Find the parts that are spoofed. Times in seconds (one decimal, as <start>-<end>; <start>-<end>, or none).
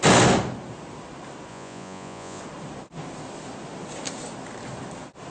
1.5-2.4